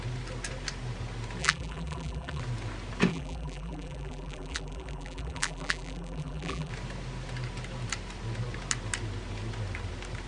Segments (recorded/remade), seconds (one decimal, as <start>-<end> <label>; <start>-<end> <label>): 0.0-1.4 recorded; 1.4-2.4 remade; 2.4-3.1 recorded; 3.1-6.7 remade; 6.7-10.3 recorded